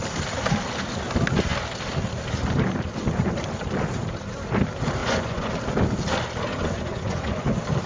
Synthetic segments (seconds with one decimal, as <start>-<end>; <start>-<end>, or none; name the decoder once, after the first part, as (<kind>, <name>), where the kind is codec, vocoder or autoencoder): 5.0-5.5 (vocoder, Vocos); 6.5-7.5

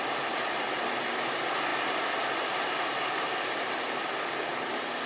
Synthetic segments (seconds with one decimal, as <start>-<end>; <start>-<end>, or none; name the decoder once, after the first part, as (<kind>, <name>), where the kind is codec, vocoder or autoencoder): none